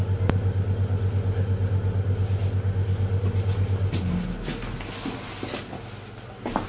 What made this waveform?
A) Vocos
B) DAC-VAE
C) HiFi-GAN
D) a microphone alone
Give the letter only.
D